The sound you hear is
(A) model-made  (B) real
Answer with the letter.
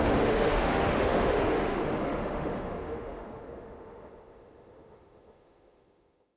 A